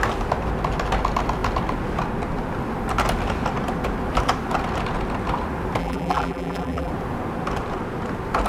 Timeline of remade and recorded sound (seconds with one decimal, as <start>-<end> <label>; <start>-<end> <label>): 0.0-5.8 recorded; 5.8-6.9 remade; 6.9-8.5 recorded